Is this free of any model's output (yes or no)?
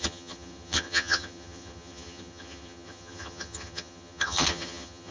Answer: no